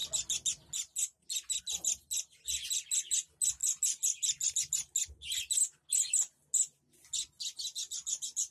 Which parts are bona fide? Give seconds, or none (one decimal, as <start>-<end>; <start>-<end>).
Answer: 0.0-8.5